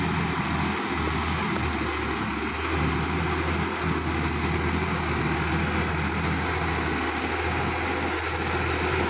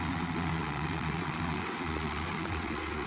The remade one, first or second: second